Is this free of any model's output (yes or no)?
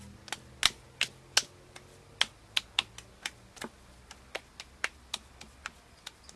yes